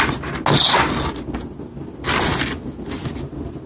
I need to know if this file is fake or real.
real